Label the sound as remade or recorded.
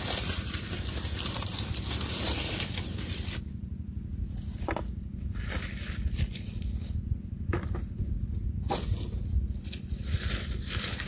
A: recorded